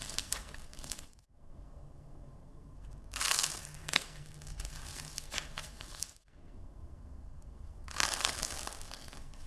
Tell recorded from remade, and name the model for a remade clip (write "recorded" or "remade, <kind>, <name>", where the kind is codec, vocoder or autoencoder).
remade, codec, SNAC